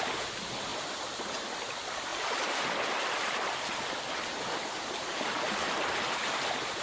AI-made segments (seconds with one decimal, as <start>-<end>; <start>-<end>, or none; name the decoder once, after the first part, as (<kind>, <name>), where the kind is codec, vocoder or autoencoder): 0.7-1.3 (vocoder, BigVGAN v2)